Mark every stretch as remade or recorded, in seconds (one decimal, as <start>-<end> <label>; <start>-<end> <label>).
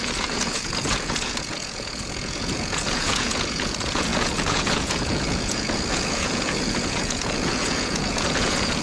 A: 0.0-8.8 remade